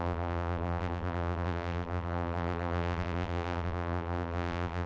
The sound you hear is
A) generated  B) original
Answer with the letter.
A